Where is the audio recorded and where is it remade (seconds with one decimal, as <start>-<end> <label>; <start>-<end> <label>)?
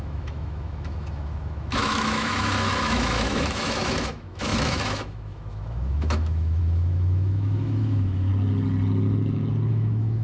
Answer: 0.0-8.3 remade; 8.3-9.7 recorded; 9.7-10.2 remade